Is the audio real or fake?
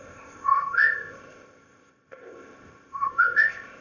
fake